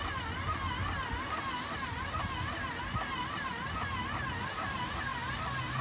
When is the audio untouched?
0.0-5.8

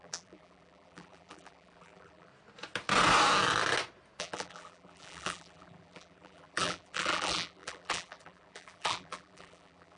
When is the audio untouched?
2.3-4.2

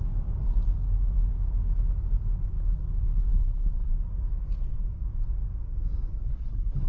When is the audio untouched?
0.0-3.3; 3.9-6.3

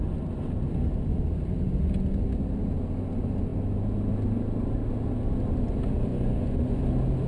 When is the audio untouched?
0.0-6.1; 6.8-7.3

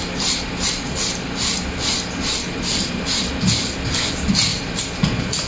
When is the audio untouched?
0.0-5.5

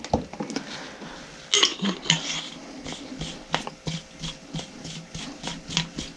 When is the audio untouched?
0.0-6.2